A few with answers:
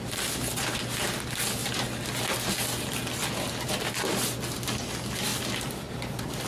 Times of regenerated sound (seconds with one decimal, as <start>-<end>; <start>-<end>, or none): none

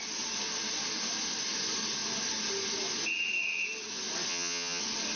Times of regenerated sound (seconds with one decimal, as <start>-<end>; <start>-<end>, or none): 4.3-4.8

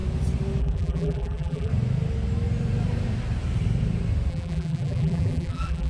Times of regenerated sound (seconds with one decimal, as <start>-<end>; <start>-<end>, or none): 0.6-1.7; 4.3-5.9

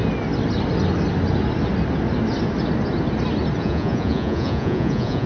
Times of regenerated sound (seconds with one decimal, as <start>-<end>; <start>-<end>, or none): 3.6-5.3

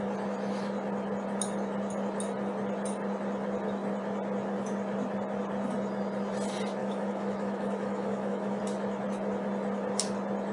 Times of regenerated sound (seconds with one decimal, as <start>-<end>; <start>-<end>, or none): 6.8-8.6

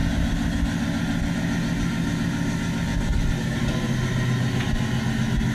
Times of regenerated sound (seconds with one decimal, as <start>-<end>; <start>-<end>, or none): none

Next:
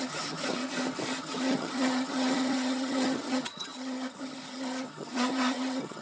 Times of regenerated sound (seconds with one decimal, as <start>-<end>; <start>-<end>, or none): 0.0-0.6; 1.2-6.0